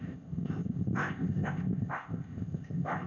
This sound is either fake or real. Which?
fake